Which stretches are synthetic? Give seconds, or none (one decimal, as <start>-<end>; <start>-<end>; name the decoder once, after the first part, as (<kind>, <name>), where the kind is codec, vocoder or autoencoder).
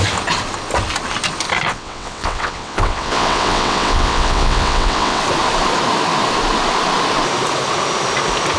1.7-5.2 (vocoder, WaveNeXt)